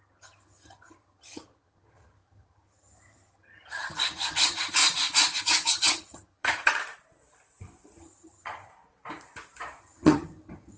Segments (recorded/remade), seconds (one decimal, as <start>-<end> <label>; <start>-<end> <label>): 0.0-4.8 remade; 4.8-5.4 recorded; 5.4-6.7 remade; 6.7-8.0 recorded; 8.0-8.7 remade; 8.7-9.8 recorded; 9.8-10.8 remade